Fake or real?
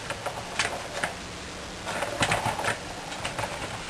real